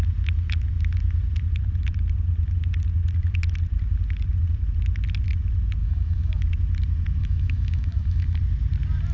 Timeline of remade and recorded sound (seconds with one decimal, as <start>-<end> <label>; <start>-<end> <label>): 0.0-5.8 recorded; 5.8-6.4 remade; 6.4-7.2 recorded; 7.2-8.4 remade; 8.4-9.1 recorded